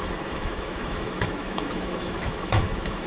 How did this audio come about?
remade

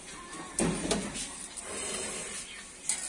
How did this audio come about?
recorded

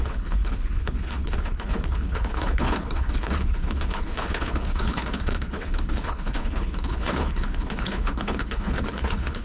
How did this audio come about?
remade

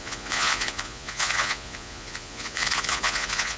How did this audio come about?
remade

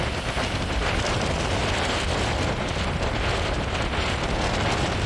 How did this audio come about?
recorded